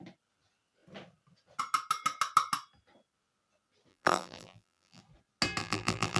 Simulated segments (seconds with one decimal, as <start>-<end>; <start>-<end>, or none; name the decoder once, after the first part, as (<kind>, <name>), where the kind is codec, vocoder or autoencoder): 3.9-5.0 (vocoder, BigVGAN v2); 5.6-6.2

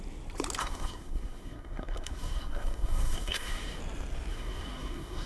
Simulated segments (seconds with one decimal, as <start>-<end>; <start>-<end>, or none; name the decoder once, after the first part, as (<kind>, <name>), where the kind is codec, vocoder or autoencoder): 0.6-3.8 (codec, SNAC); 4.3-5.3